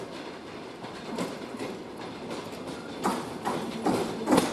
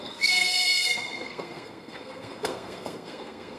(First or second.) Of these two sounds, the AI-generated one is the second